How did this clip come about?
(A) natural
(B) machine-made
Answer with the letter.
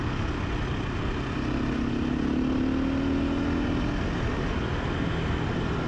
A